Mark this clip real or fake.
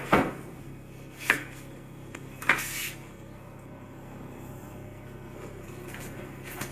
fake